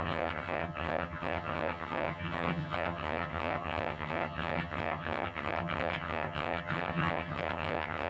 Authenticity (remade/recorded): remade